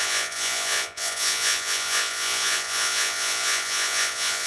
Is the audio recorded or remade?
remade